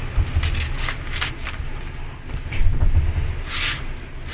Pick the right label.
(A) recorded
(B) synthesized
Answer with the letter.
A